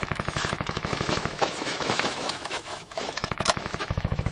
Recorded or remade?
remade